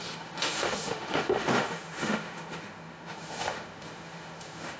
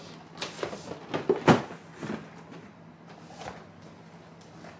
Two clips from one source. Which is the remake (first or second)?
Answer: first